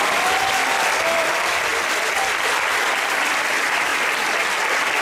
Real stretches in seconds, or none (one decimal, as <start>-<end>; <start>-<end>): 0.0-5.0